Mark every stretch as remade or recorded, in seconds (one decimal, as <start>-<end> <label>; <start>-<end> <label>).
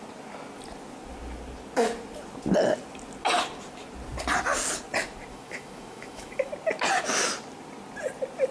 0.0-5.3 recorded; 5.3-6.5 remade; 6.5-8.5 recorded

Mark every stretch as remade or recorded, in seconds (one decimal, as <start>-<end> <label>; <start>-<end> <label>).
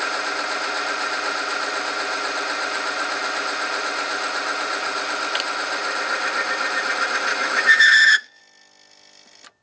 0.0-7.3 recorded; 7.3-8.4 remade; 8.4-9.6 recorded